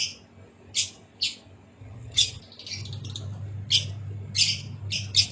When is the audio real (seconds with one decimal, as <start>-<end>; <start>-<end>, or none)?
0.0-1.8; 2.4-5.3